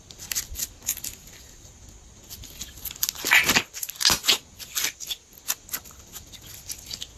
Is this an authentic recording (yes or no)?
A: yes